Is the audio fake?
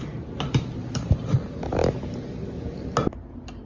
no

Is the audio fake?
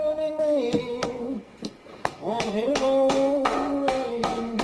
yes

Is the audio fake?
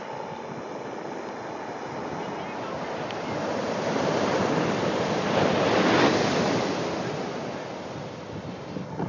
no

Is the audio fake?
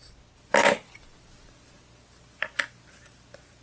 no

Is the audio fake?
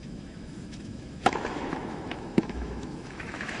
yes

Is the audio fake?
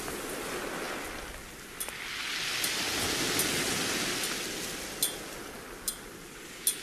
no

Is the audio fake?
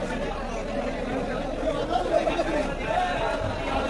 no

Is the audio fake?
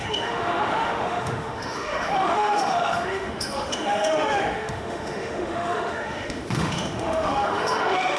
yes